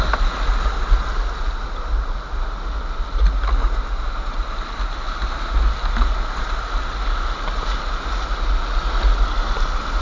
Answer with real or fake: real